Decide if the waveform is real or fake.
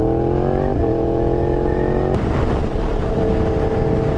real